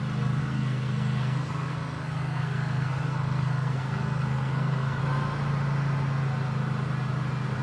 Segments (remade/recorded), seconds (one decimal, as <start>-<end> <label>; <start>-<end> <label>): 0.0-0.4 recorded; 0.4-5.0 remade; 5.0-7.6 recorded